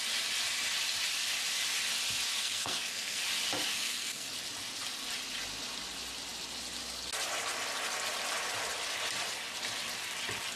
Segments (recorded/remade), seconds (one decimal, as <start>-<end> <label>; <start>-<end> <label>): 0.0-2.4 recorded; 2.4-3.2 remade; 3.2-3.7 recorded; 3.7-4.3 remade; 4.3-10.6 recorded